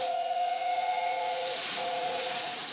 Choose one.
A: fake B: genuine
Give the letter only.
A